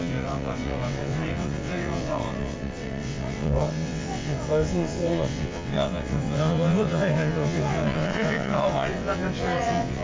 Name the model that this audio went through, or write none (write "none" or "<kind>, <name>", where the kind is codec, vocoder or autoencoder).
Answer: vocoder, WaveNeXt